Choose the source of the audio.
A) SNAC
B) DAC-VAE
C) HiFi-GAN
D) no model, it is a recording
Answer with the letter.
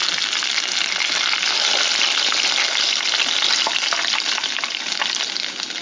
D